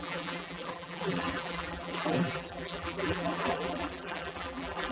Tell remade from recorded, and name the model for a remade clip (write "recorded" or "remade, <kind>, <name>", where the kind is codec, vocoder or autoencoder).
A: remade, vocoder, BigVGAN v2